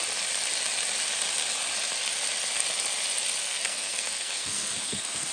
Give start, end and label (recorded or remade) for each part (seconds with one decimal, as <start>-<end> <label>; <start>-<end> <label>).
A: 0.0-3.4 recorded; 3.4-5.3 remade